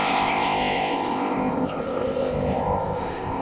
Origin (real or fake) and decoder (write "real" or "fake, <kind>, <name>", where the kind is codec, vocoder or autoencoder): fake, codec, ZipCodec